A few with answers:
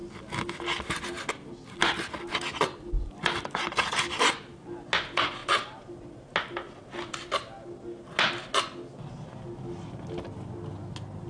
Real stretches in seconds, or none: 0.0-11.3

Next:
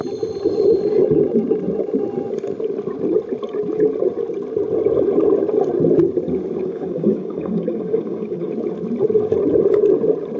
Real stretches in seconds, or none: 0.0-6.6; 8.5-10.4

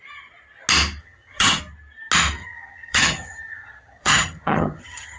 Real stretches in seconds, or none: 0.0-1.0; 1.6-2.4

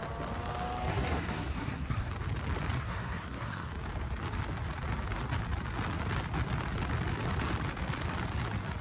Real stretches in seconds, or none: 0.0-0.9; 2.1-2.8; 3.7-8.8

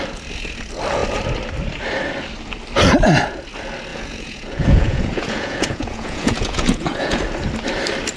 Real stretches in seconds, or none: 0.0-3.9; 7.2-8.2